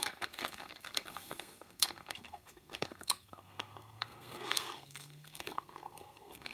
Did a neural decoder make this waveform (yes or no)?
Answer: yes